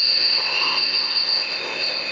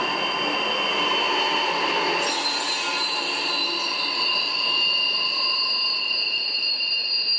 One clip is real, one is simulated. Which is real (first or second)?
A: second